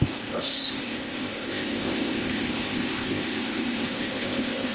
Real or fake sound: fake